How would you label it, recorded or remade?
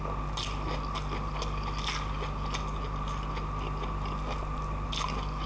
recorded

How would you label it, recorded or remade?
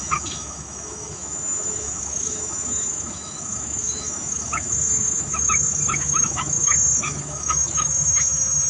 remade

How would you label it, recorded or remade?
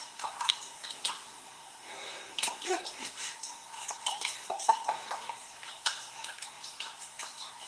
remade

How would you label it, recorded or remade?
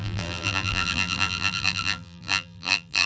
remade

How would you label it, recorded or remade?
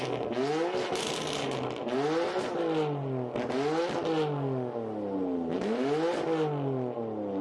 recorded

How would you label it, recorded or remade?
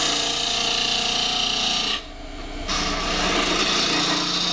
recorded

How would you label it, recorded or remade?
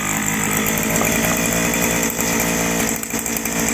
recorded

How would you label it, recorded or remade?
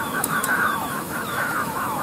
remade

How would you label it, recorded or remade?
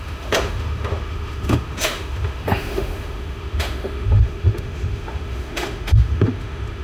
remade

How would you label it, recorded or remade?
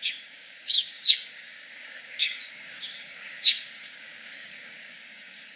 remade